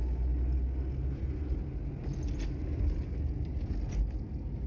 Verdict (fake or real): real